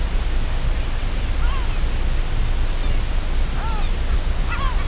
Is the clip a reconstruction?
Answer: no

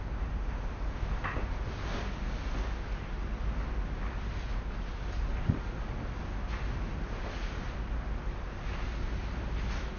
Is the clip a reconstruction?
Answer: no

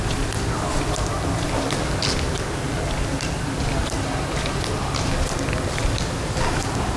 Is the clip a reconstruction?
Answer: no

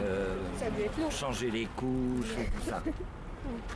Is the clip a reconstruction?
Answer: no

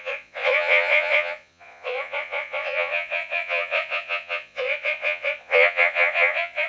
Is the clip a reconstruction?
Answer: yes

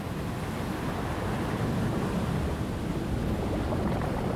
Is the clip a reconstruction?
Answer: no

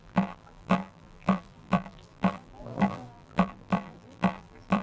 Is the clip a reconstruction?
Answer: yes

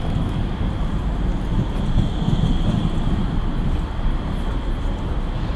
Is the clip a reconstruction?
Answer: no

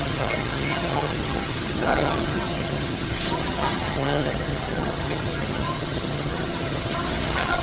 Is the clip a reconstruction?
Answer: yes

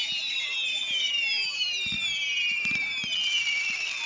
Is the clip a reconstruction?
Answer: no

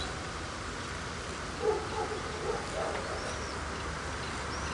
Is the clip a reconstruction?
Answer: no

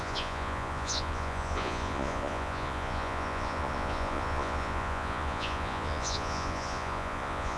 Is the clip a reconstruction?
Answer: yes